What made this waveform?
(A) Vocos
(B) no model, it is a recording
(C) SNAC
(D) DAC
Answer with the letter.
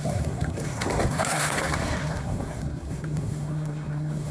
C